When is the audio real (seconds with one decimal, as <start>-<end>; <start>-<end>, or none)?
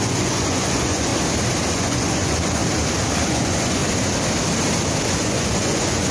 1.1-1.7; 2.6-3.3; 3.8-5.0